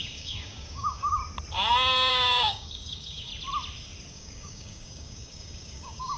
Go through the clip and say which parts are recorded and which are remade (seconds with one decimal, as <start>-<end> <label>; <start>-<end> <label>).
0.0-1.2 remade; 1.2-2.1 recorded; 2.1-3.3 remade; 3.3-4.1 recorded; 4.1-6.2 remade

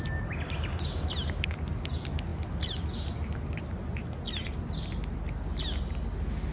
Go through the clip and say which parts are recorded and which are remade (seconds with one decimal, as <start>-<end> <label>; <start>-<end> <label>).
0.0-6.5 recorded

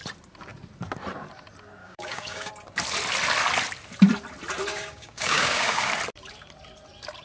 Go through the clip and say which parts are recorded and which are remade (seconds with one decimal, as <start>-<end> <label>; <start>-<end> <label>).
0.0-1.8 recorded; 1.8-2.5 remade; 2.5-4.7 recorded; 4.7-5.9 remade; 5.9-7.2 recorded

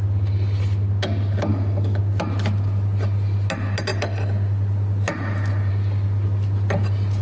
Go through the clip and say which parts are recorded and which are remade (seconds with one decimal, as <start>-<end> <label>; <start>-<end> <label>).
0.0-1.5 recorded; 1.5-2.0 remade; 2.0-7.2 recorded